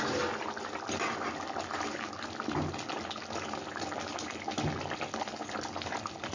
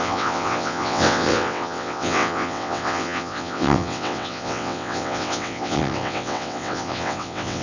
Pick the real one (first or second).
first